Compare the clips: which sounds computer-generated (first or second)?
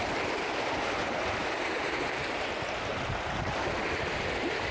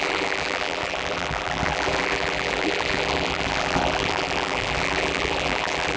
second